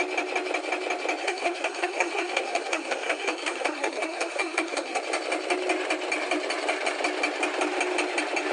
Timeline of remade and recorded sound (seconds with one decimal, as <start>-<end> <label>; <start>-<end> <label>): 0.0-1.2 recorded; 1.2-5.0 remade; 5.0-8.5 recorded